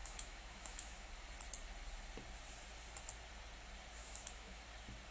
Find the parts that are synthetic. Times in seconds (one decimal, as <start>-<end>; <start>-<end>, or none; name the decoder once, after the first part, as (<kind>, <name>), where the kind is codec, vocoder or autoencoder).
0.0-1.1 (autoencoder, DAC-VAE); 4.0-4.6